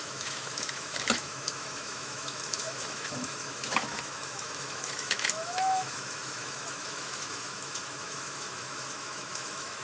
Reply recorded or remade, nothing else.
remade